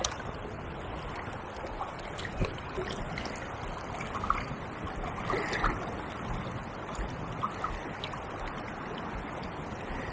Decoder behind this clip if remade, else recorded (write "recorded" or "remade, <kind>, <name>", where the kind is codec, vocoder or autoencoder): recorded